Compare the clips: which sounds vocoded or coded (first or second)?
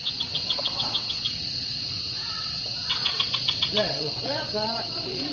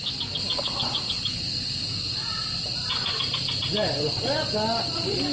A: first